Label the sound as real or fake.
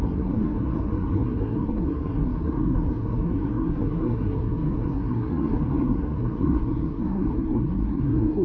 fake